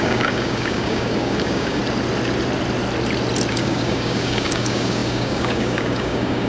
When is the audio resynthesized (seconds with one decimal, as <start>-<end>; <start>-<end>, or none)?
0.0-1.8; 3.5-6.5